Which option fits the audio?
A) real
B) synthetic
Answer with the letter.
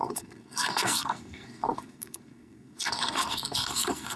B